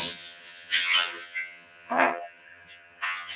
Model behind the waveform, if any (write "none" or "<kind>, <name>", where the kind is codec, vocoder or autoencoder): vocoder, HiFi-GAN